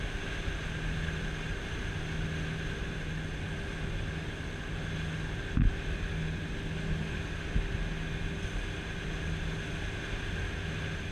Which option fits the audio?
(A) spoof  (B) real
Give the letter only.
B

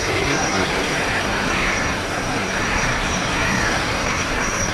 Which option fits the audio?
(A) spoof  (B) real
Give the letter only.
A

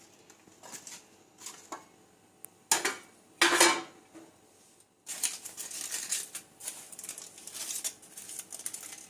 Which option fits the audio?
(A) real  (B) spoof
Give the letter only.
A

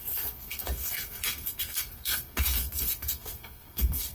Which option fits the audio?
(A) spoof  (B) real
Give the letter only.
A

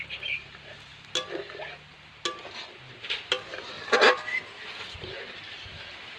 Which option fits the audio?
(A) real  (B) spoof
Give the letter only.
A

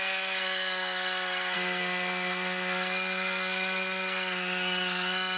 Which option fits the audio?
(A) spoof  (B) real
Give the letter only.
A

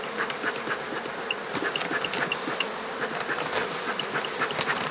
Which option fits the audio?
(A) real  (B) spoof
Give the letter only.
A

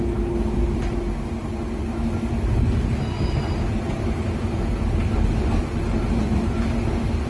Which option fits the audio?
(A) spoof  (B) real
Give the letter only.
B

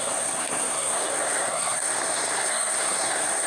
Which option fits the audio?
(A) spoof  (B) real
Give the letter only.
A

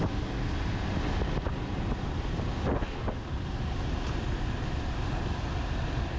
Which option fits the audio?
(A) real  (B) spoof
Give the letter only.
A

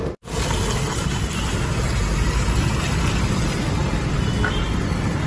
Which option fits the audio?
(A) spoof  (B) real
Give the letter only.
B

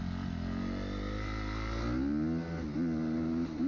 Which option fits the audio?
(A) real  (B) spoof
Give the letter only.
A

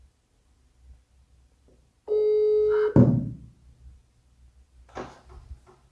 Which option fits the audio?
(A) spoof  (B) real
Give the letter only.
B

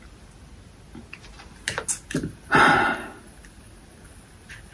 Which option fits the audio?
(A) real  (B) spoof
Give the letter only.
A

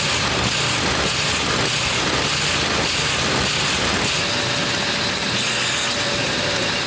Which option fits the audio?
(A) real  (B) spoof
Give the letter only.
A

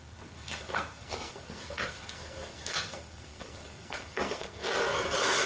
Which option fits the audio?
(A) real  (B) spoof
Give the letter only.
B